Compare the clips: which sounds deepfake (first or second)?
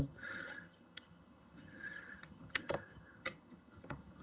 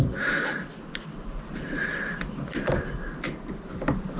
first